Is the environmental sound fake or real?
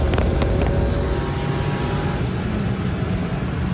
real